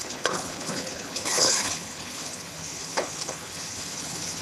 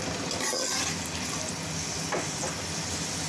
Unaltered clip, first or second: second